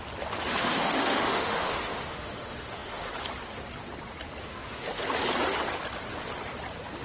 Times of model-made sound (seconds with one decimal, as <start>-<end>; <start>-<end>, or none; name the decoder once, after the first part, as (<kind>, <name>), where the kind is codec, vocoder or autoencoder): 0.6-3.1 (autoencoder, DAC-VAE); 4.4-5.0